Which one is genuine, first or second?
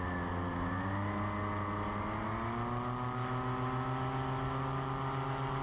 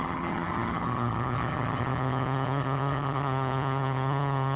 first